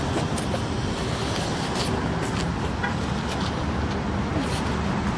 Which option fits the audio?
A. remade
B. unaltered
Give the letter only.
B